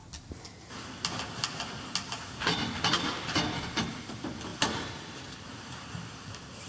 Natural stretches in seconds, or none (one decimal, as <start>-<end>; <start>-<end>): 0.0-4.0